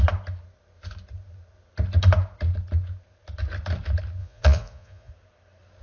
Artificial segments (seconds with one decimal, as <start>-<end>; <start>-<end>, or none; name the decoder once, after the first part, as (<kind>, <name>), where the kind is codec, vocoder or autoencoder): 4.2-5.1 (vocoder, Vocos)